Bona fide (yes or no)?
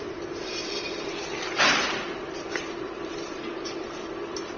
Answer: no